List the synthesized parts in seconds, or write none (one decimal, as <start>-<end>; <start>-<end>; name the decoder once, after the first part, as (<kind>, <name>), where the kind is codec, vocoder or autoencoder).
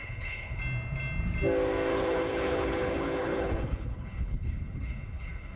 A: 0.0-0.6 (codec, HILCodec); 1.9-5.6